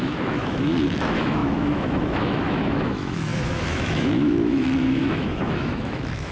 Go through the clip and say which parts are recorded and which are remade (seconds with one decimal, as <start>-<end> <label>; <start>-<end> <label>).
0.0-6.3 remade